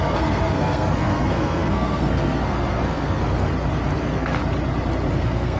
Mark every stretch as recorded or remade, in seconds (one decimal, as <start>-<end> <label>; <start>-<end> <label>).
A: 0.0-3.5 remade; 3.5-4.0 recorded; 4.0-4.4 remade; 4.4-5.1 recorded; 5.1-5.6 remade